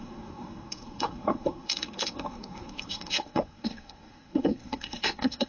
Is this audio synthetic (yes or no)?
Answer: yes